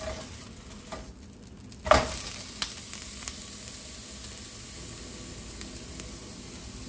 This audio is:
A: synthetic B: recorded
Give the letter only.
B